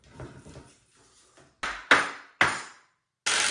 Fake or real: real